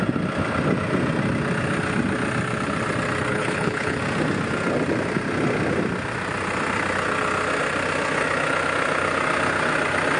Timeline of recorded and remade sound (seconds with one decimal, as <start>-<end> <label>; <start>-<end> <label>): 0.0-3.3 recorded; 3.3-4.0 remade; 4.0-10.2 recorded